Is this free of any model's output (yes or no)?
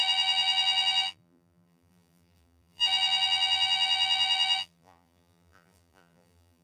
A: no